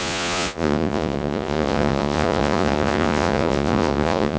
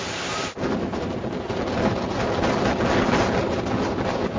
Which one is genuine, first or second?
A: second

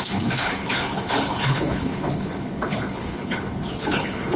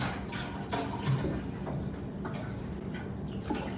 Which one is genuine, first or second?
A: second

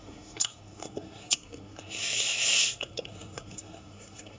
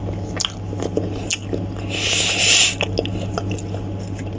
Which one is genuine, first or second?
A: second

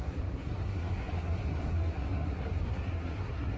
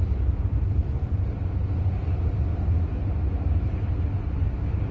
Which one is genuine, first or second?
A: second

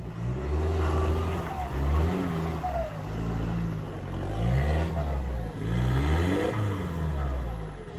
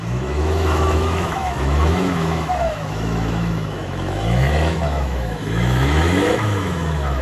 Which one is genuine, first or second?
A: first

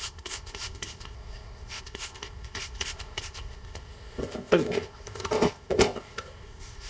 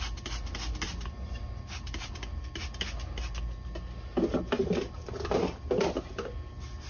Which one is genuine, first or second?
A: second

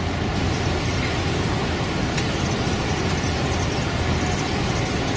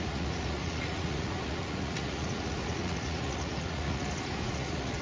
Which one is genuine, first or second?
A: first